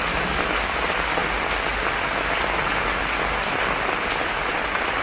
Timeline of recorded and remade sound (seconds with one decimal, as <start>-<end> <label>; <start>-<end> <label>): 0.0-5.0 recorded